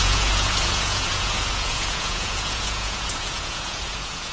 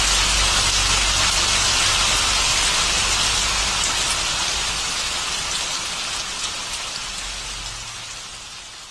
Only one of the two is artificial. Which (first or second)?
first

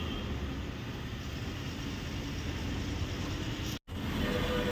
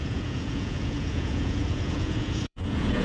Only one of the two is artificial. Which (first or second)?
second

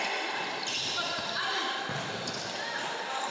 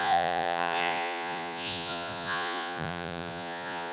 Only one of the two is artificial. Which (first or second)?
second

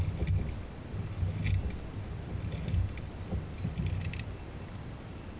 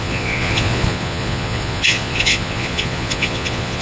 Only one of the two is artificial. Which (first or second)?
second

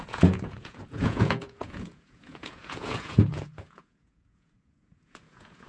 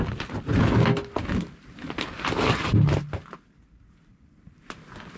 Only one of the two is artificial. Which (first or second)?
first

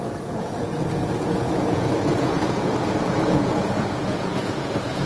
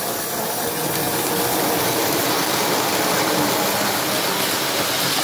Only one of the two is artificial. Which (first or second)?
first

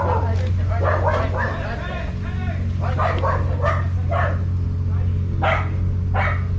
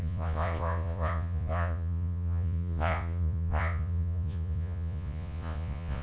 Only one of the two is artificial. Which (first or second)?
second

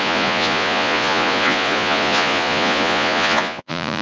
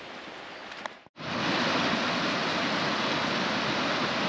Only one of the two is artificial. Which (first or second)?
first